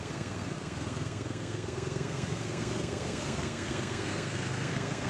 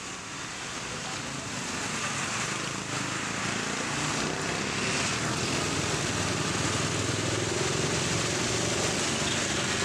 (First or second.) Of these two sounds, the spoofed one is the first